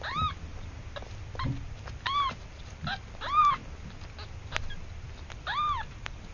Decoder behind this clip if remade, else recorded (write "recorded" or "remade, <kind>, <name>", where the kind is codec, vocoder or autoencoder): recorded